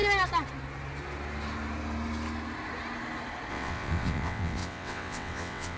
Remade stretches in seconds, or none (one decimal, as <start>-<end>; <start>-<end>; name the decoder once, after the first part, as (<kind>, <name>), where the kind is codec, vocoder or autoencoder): 3.5-5.8 (vocoder, WaveNeXt)

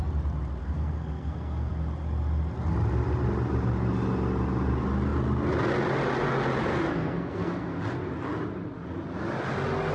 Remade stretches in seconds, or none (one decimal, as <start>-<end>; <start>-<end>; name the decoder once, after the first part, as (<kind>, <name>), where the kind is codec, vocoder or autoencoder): 0.6-1.7 (codec, SNAC); 6.7-7.8